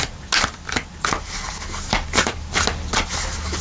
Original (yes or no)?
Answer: yes